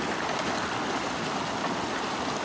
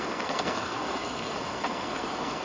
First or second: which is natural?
first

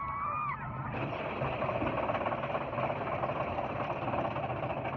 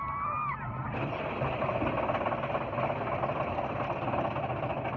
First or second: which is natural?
second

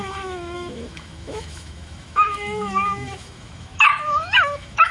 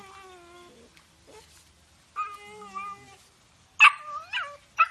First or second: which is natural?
second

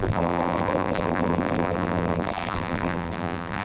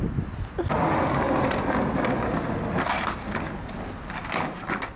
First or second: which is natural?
second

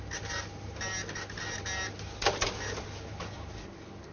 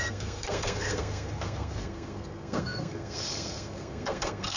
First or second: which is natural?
first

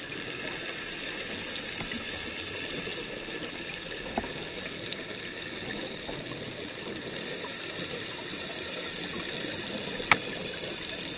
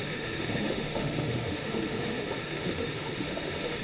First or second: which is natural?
first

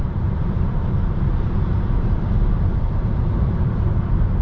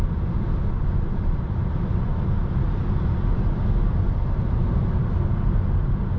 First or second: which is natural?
second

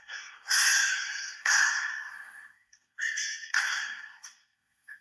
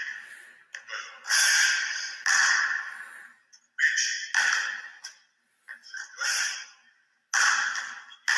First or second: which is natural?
second